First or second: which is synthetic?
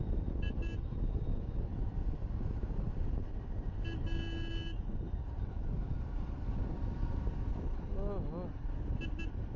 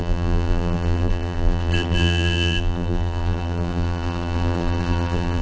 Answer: second